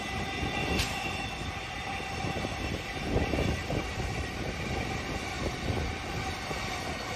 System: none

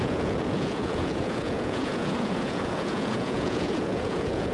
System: vocoder, Vocos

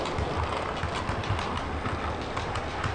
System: none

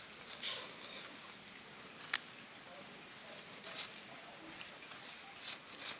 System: none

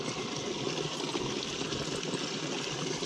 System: none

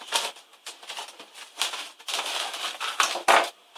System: vocoder, BigVGAN v2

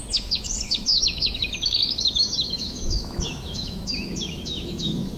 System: autoencoder, DAC-VAE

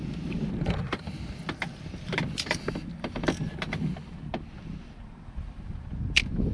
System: none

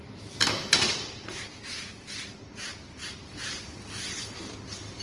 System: vocoder, BigVGAN v2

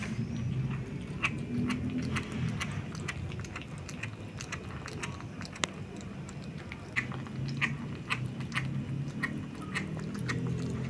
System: none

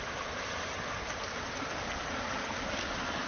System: none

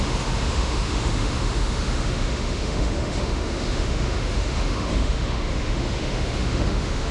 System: autoencoder, DAC-VAE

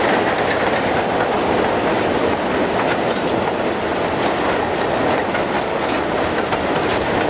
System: none